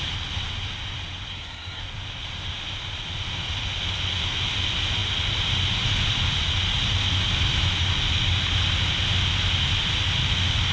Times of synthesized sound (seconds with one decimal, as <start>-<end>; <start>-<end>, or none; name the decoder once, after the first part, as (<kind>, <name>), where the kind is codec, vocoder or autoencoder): 1.3-1.8 (codec, SNAC)